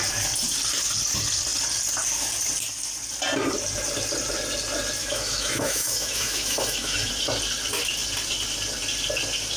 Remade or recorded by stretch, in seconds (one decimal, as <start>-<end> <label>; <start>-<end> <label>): 0.0-5.0 recorded; 5.0-7.1 remade; 7.1-9.6 recorded

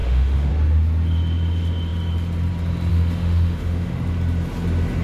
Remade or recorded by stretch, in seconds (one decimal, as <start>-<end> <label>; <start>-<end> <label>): 0.0-0.5 remade; 0.5-2.9 recorded; 2.9-3.9 remade; 3.9-5.0 recorded

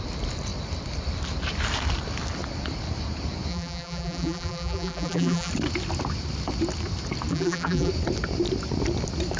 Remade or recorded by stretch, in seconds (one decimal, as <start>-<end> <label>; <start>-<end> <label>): 0.0-3.5 recorded; 3.5-5.5 remade; 5.5-7.3 recorded; 7.3-7.9 remade; 7.9-9.4 recorded

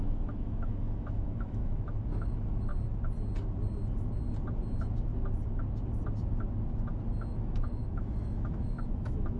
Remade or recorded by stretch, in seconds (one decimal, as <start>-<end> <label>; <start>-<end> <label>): 0.0-2.7 remade; 2.7-7.3 recorded; 7.3-9.4 remade

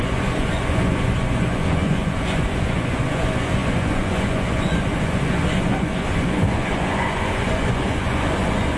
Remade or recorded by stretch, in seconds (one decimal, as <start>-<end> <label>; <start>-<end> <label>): 0.0-8.8 remade

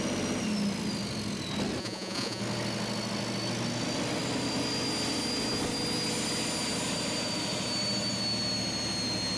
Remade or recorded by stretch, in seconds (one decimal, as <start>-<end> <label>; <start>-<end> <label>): 0.0-1.8 recorded; 1.8-2.4 remade; 2.4-9.4 recorded